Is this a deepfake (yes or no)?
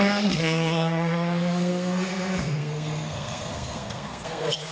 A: yes